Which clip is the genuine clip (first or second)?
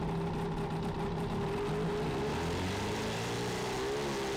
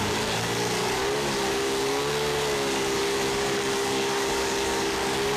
first